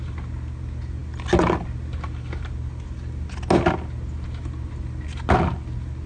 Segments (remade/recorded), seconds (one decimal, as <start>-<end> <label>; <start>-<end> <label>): 0.0-6.1 recorded